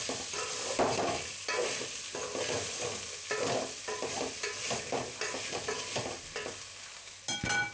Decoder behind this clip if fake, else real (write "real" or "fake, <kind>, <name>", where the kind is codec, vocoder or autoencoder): real